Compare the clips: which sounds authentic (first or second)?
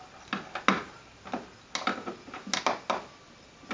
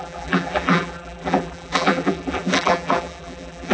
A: first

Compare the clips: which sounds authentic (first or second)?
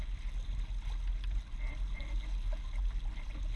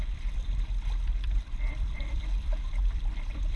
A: first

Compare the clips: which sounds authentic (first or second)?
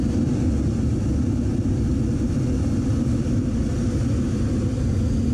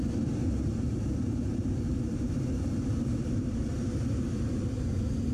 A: first